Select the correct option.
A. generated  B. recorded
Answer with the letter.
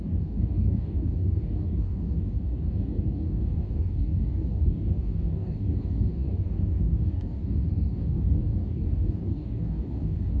A